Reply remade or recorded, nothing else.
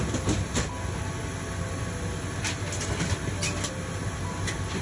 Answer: recorded